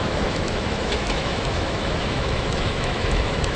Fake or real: fake